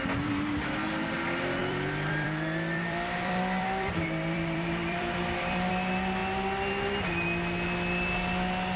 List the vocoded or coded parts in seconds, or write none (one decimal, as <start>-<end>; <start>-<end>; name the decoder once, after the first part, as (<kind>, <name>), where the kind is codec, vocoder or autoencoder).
1.6-5.7 (vocoder, BigVGAN v2)